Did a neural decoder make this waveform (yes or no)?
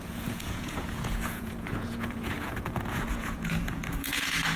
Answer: yes